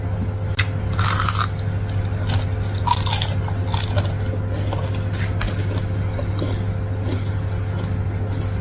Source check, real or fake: real